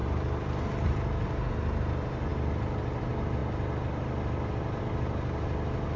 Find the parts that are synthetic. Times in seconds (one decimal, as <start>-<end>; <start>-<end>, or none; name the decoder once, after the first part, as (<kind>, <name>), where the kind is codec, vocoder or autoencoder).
none